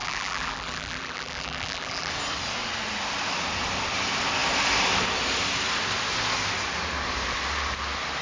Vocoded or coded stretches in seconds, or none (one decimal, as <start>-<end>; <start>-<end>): 0.0-2.1